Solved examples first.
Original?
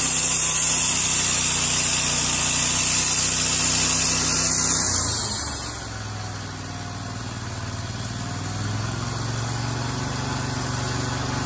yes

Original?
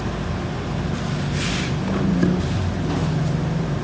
yes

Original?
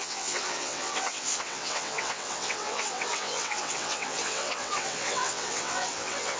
no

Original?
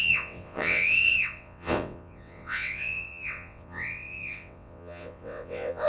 no